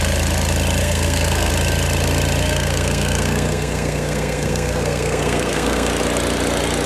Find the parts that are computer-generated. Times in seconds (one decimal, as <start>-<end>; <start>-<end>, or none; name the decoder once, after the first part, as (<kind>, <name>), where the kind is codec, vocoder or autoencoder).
0.8-1.5 (codec, SNAC); 2.4-5.9